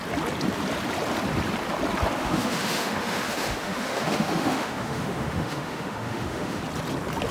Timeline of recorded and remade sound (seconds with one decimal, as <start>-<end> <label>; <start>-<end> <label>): 0.0-2.2 recorded; 2.2-6.6 remade; 6.6-7.3 recorded